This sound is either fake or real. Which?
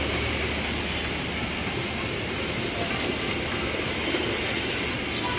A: real